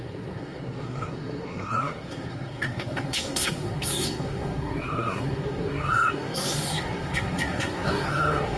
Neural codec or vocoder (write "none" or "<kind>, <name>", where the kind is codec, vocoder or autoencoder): codec, SNAC